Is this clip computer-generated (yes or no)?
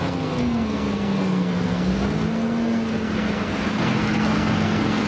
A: yes